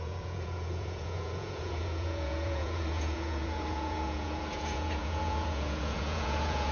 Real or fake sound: fake